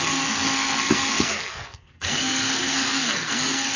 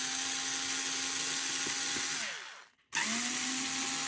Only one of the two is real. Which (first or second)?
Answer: second